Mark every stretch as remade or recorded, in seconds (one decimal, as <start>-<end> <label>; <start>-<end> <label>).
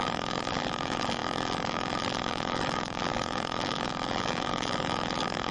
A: 0.0-5.5 remade